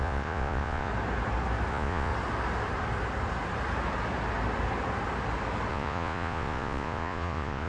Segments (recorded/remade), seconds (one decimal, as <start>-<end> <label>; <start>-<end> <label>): 0.0-0.9 remade; 0.9-1.7 recorded; 1.7-2.1 remade; 2.1-5.7 recorded; 5.7-7.7 remade